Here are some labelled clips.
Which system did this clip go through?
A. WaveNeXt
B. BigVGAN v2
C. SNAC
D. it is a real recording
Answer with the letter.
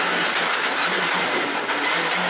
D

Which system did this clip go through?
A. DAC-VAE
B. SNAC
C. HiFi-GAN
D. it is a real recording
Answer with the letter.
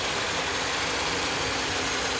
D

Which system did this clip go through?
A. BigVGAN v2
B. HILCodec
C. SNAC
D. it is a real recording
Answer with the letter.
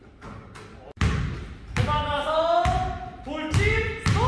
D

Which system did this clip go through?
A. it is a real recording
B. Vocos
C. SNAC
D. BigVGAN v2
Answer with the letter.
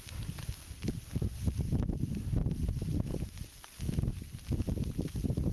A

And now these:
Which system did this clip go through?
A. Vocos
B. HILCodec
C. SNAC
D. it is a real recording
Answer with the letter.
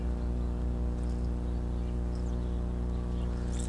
D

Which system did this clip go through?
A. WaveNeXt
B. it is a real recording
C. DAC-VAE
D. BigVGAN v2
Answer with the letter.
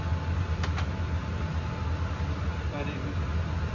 B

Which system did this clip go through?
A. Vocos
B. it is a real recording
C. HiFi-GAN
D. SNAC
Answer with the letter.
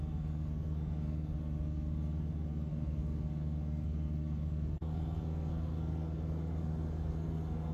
D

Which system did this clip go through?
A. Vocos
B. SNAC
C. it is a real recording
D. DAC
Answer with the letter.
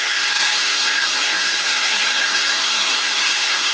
B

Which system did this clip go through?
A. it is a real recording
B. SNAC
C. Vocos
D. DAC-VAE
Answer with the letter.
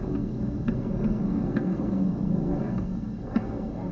B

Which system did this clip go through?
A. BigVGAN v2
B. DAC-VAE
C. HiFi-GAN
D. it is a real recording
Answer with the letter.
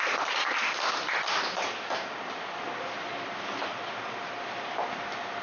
D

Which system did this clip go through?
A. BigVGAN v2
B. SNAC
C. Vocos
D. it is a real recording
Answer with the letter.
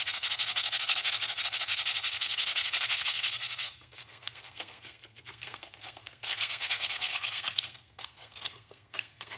B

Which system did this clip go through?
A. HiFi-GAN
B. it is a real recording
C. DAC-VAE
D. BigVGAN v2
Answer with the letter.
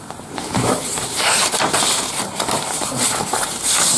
D